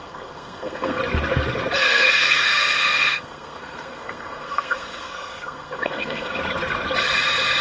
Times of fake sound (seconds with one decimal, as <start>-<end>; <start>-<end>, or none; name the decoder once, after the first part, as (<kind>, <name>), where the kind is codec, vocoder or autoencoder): 0.0-1.0 (codec, SNAC); 1.8-6.4